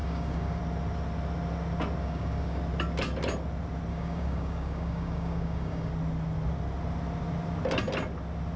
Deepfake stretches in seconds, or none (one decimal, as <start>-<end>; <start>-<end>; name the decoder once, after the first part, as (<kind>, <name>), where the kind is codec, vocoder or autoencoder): 0.0-0.6 (codec, DAC); 2.0-2.6; 3.9-5.9